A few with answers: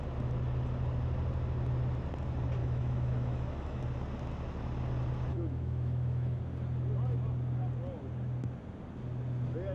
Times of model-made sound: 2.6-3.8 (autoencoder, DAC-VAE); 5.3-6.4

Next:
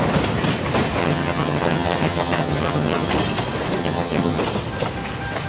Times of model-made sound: 1.0-3.1 (vocoder, HiFi-GAN); 3.8-4.4

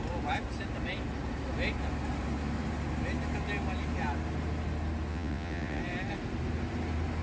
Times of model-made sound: 5.1-5.8 (vocoder, WaveNeXt)

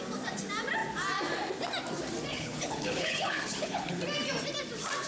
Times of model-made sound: 2.3-4.0 (codec, HILCodec)

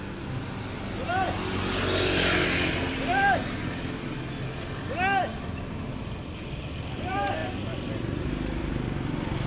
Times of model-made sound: none

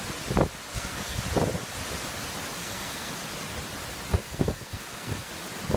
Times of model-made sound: 0.7-1.2 (codec, SNAC); 2.6-3.1; 4.1-5.3